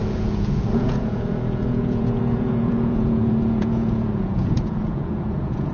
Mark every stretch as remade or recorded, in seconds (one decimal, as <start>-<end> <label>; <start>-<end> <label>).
0.0-5.7 remade